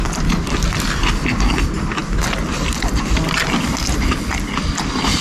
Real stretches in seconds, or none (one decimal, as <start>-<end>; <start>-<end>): 0.0-5.2